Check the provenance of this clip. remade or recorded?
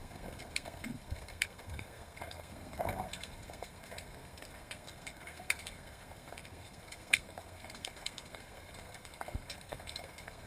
remade